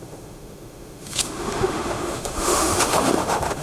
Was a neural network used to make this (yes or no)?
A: yes